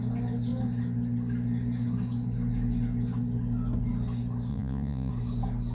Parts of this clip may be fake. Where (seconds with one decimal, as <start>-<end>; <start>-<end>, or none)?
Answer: 4.5-5.1